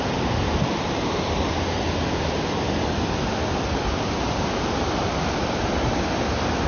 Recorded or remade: recorded